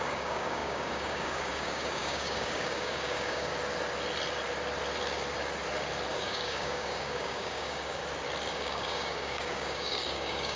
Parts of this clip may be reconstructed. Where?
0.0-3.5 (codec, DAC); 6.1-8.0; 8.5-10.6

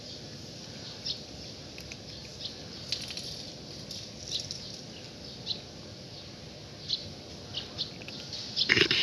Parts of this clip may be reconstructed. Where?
none

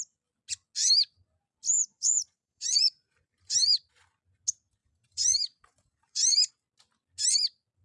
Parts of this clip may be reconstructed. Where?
1.8-3.9 (vocoder, BigVGAN v2); 4.8-6.5